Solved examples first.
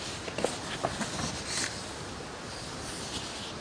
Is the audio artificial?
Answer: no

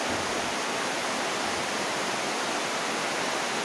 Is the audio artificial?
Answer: no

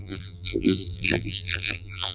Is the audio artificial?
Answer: yes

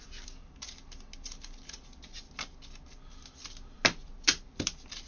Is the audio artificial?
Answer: no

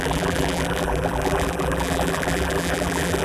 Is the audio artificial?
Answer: yes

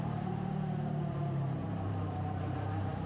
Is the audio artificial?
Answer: yes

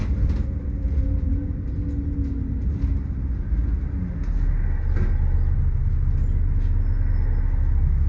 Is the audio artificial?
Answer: no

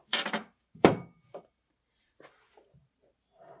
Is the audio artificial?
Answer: yes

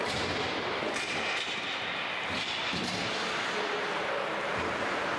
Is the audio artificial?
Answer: yes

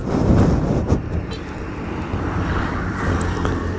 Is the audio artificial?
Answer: yes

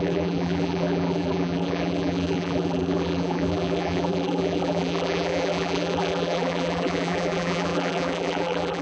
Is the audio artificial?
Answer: yes